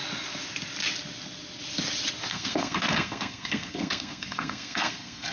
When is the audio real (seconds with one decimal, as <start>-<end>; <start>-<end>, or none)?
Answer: 0.0-2.3